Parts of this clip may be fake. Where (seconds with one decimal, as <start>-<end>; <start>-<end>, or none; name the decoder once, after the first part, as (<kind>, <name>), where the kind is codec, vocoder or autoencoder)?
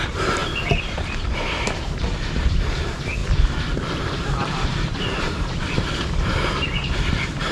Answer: 0.0-3.2 (vocoder, BigVGAN v2); 4.0-7.5